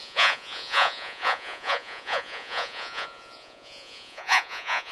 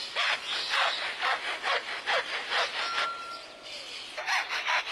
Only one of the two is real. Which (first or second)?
second